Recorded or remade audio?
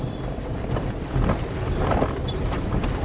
remade